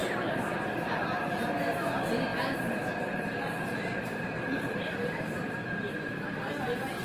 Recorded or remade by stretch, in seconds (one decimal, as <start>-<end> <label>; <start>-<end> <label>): 0.0-1.4 remade; 1.4-2.3 recorded; 2.3-6.5 remade; 6.5-7.0 recorded